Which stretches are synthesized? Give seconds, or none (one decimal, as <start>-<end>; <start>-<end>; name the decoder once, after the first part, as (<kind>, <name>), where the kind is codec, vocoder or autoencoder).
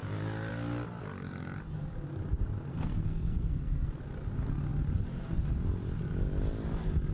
2.7-4.0 (codec, SNAC)